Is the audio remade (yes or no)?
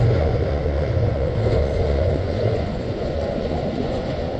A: yes